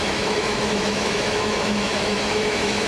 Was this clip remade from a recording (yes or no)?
yes